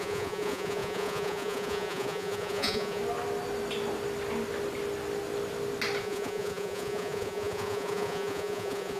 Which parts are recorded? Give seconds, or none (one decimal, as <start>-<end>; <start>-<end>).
3.0-6.0